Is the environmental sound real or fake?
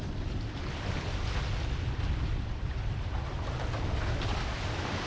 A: real